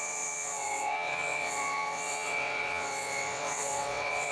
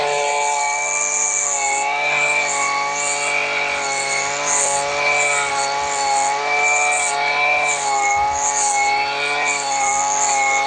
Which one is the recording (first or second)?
second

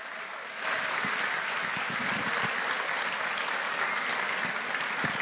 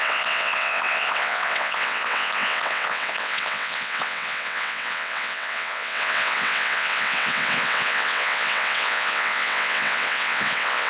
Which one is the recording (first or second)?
first